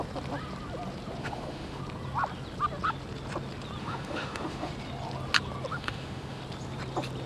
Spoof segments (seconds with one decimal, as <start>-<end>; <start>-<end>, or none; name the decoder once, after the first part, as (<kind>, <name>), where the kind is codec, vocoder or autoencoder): 1.2-1.8 (autoencoder, DAC-VAE); 3.8-4.7; 5.7-6.4